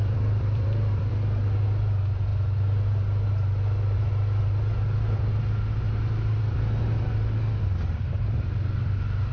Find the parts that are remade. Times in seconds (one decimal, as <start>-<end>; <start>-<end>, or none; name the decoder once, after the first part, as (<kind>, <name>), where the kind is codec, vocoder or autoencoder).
0.0-1.1 (vocoder, BigVGAN v2)